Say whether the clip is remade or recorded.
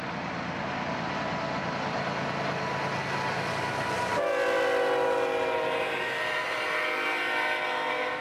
recorded